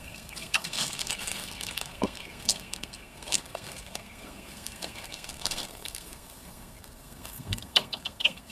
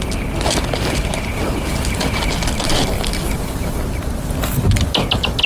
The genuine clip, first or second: second